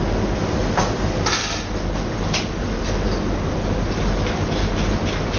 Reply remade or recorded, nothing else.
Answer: recorded